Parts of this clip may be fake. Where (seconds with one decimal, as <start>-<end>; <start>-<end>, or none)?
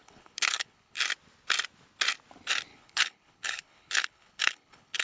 0.0-1.0; 2.7-5.0